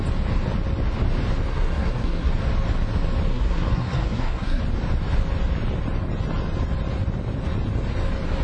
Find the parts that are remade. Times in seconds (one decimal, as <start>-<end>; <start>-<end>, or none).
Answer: 1.5-2.3; 3.3-4.6

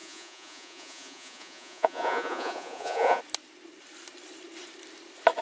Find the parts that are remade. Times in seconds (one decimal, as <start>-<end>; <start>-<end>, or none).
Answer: 0.0-3.2

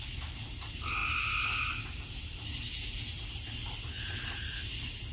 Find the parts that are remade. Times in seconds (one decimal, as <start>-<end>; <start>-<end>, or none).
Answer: none

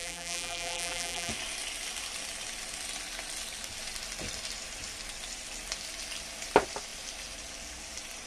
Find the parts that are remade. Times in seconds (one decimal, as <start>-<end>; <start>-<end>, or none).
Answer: 0.0-1.3